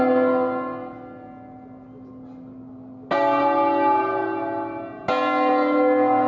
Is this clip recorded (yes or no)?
yes